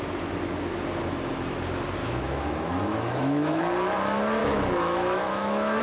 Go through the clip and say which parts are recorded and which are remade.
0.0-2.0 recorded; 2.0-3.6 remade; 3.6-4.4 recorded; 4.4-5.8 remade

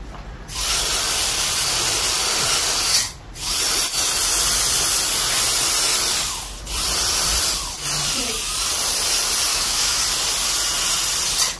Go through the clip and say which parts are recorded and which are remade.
0.0-9.5 recorded; 9.5-10.0 remade; 10.0-11.6 recorded

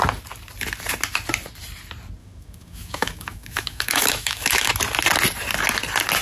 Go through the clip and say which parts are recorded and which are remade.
0.0-2.2 recorded; 2.2-4.7 remade; 4.7-6.2 recorded

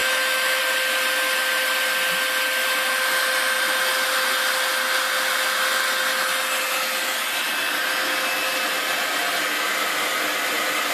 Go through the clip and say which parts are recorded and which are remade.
0.0-0.6 remade; 0.6-10.9 recorded